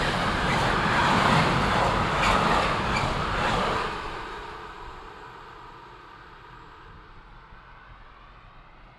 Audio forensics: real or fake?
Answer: real